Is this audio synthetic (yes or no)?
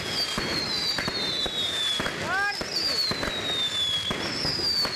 no